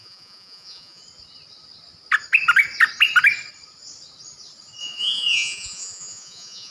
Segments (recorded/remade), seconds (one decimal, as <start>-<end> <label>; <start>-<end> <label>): 0.0-1.0 remade; 1.0-4.8 recorded; 4.8-6.7 remade